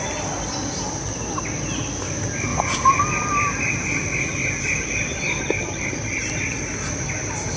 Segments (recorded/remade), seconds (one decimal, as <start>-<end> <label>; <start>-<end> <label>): 0.0-2.5 recorded; 2.5-3.0 remade; 3.0-7.6 recorded

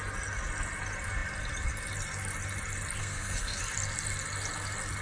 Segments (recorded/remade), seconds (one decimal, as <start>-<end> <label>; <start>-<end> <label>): 0.0-3.0 recorded; 3.0-3.6 remade; 3.6-5.0 recorded

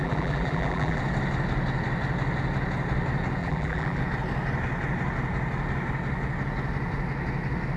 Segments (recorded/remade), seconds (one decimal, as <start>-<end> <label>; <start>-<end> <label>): 0.0-1.0 remade; 1.0-3.4 recorded; 3.4-4.0 remade; 4.0-7.8 recorded